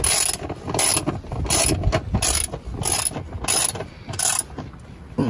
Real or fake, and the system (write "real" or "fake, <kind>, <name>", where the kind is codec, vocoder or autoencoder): real